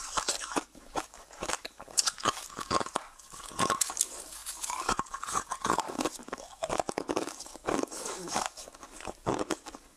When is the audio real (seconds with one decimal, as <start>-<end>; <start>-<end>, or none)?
none